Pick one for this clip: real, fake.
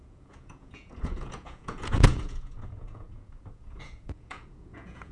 fake